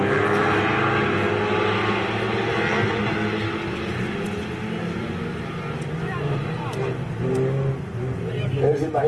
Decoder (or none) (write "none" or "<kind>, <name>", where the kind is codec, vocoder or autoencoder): none